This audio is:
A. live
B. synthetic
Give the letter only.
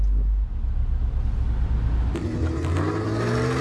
A